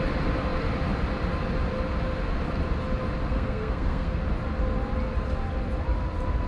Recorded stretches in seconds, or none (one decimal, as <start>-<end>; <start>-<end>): 0.0-3.3; 4.2-6.5

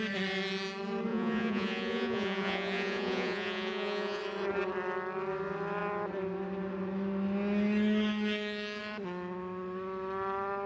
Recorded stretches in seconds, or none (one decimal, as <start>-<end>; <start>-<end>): 0.0-1.1; 4.2-10.7